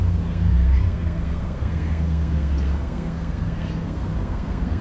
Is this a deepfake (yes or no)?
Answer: yes